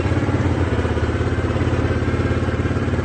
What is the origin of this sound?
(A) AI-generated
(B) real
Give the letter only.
A